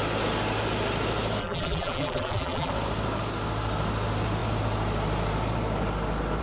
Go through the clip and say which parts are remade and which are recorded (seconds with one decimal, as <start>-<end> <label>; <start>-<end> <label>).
0.0-1.4 recorded; 1.4-2.7 remade; 2.7-6.4 recorded